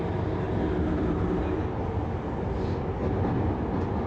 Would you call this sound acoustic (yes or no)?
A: yes